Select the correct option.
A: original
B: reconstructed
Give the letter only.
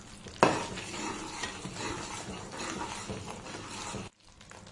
A